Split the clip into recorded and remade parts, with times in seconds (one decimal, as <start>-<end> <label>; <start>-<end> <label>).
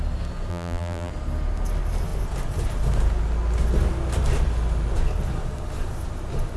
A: 0.0-0.5 recorded; 0.5-1.1 remade; 1.1-6.6 recorded